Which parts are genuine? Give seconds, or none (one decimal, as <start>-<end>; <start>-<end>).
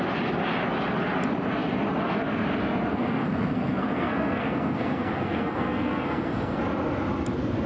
0.0-2.9; 6.6-7.7